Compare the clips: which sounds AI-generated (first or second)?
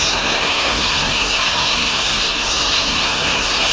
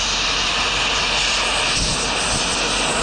first